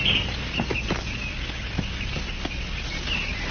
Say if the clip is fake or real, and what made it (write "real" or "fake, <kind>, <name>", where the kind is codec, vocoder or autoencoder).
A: real